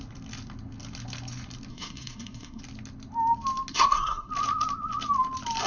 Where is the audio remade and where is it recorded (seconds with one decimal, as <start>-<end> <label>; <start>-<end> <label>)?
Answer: 0.0-1.7 recorded; 1.7-2.6 remade; 2.6-3.7 recorded; 3.7-4.3 remade; 4.3-5.7 recorded

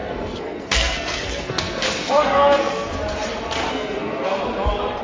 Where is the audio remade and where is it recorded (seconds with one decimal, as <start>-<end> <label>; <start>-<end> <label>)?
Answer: 0.0-2.9 remade; 2.9-3.7 recorded; 3.7-4.3 remade; 4.3-5.0 recorded

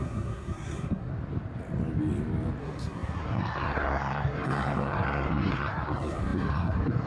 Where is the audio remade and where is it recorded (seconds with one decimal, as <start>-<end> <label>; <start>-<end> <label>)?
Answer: 0.0-1.1 remade; 1.1-2.6 recorded; 2.6-7.1 remade

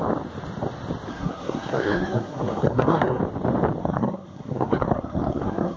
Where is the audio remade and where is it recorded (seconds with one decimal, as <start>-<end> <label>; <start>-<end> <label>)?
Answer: 0.0-1.1 recorded; 1.1-3.2 remade; 3.2-3.8 recorded; 3.8-5.8 remade

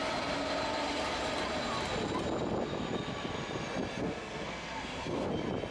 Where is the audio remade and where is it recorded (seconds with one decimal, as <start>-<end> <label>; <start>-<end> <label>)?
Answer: 0.0-4.0 recorded; 4.0-5.3 remade; 5.3-5.7 recorded

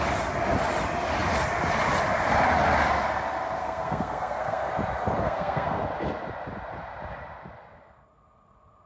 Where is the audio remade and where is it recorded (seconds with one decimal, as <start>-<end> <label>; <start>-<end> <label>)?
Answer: 0.0-3.6 recorded; 3.6-4.7 remade; 4.7-5.2 recorded; 5.2-5.8 remade; 5.8-8.9 recorded

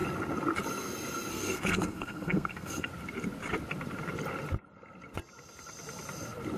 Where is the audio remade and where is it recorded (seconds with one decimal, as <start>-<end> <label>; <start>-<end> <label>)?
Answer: 0.0-1.3 recorded; 1.3-2.9 remade; 2.9-6.6 recorded

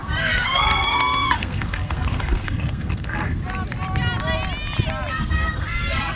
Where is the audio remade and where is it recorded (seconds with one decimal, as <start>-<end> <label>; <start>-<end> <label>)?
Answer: 0.0-3.4 remade; 3.4-5.1 recorded; 5.1-6.2 remade